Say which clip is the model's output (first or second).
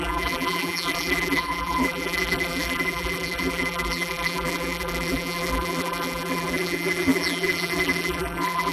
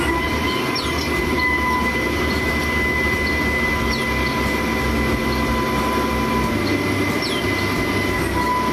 first